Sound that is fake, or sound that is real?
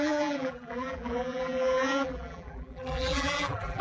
fake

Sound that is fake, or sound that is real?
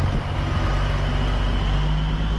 real